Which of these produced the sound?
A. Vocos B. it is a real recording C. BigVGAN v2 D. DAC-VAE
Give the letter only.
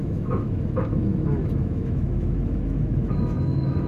D